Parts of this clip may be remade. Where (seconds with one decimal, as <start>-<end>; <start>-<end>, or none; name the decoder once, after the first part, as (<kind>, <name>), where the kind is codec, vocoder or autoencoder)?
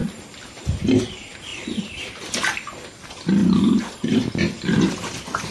none